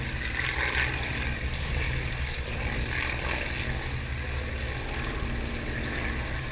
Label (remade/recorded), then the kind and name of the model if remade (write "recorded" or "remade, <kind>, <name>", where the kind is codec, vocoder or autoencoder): recorded